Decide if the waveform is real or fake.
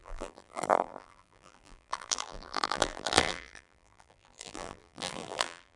fake